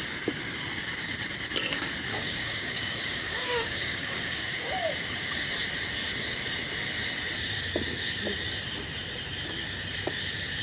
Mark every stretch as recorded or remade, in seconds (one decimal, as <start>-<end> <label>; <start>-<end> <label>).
0.0-2.1 recorded; 2.1-4.7 remade; 4.7-10.6 recorded

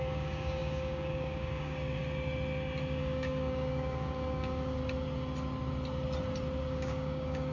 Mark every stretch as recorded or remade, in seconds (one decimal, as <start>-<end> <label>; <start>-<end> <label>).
0.0-2.0 remade; 2.0-3.0 recorded; 3.0-4.8 remade; 4.8-6.6 recorded; 6.6-7.5 remade

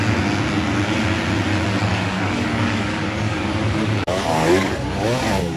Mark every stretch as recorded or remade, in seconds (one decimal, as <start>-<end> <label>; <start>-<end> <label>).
0.0-1.9 recorded; 1.9-5.6 remade

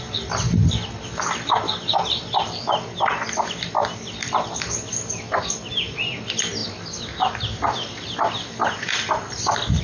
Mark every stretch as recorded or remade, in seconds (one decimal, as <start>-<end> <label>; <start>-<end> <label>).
0.0-9.8 recorded

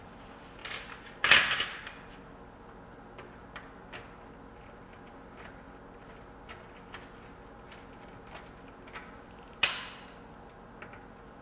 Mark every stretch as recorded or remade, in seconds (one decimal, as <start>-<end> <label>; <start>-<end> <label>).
0.0-11.4 recorded

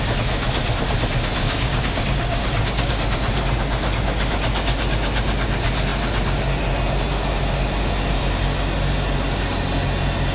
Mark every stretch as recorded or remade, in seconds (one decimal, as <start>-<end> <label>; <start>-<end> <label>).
0.0-1.4 recorded; 1.4-2.9 remade; 2.9-10.3 recorded

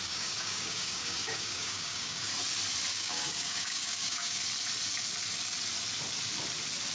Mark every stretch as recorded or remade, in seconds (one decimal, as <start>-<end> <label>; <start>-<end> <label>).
0.0-2.3 remade; 2.3-2.9 recorded; 2.9-4.4 remade; 4.4-6.9 recorded